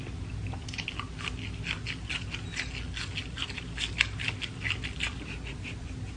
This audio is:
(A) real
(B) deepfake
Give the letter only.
A